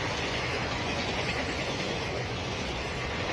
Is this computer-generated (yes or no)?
yes